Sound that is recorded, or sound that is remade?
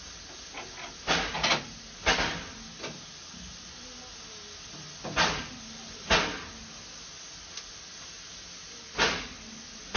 recorded